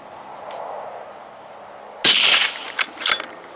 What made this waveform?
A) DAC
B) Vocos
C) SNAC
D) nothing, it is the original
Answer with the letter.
D